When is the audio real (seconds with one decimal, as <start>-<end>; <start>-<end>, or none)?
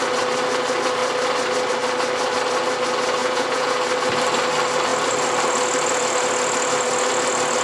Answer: 0.0-3.2; 3.7-7.6